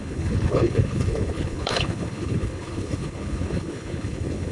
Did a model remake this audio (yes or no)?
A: yes